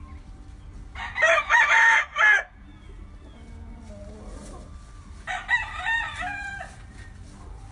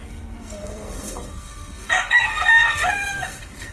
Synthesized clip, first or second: second